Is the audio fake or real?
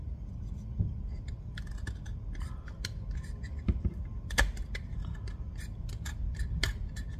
real